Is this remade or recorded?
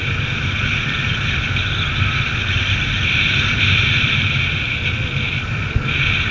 recorded